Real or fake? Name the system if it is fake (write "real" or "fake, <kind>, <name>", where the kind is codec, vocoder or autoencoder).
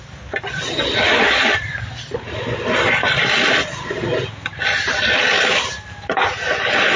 real